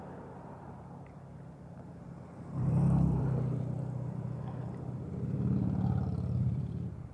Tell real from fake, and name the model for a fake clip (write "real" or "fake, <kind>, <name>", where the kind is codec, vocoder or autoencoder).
fake, vocoder, BigVGAN v2